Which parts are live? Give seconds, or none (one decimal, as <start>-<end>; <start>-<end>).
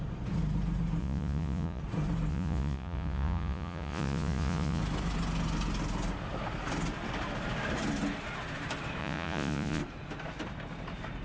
0.0-1.0; 1.8-2.3; 4.8-9.0; 9.8-11.2